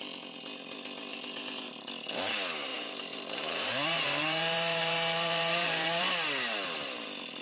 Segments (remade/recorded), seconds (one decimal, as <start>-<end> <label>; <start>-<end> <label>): 0.0-1.1 recorded; 1.1-1.7 remade; 1.7-2.7 recorded; 2.7-6.1 remade; 6.1-7.4 recorded